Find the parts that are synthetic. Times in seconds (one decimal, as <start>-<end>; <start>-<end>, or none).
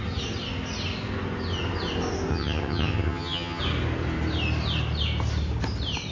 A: 2.3-3.6